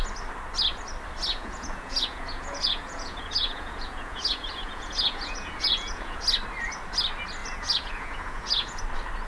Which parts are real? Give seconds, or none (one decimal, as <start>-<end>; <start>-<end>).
0.0-1.3; 6.2-7.4; 8.8-9.3